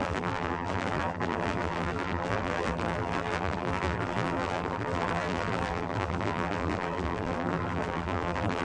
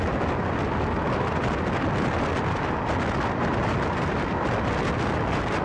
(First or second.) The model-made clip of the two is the first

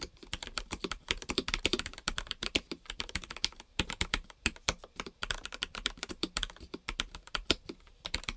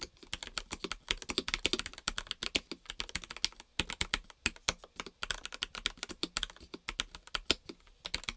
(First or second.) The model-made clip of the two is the first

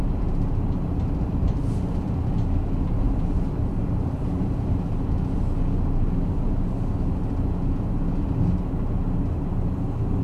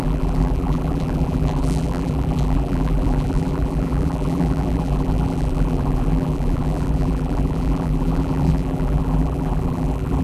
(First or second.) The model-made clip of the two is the second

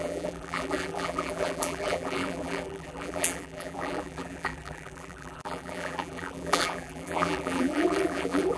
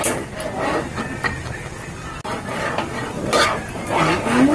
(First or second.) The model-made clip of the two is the first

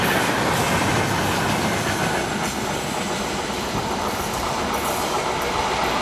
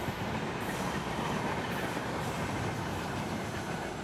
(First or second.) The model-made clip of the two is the second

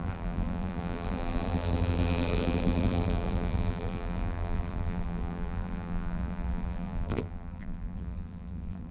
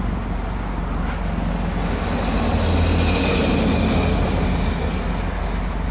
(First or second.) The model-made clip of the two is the first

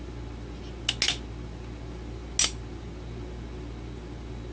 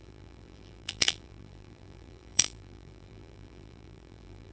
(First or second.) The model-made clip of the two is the second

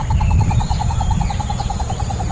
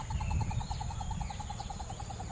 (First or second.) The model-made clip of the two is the first